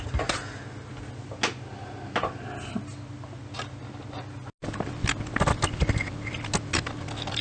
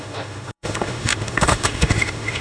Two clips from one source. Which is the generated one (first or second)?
second